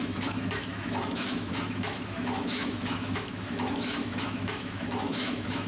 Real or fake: fake